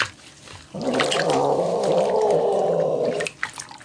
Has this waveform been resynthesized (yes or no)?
no